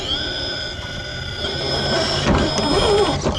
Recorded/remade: recorded